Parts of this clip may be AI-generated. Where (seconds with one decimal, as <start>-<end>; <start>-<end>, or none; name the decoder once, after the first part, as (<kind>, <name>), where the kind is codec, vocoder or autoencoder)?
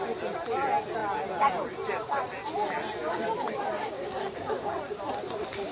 3.0-4.7 (codec, DAC)